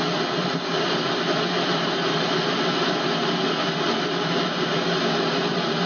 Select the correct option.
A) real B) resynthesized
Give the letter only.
A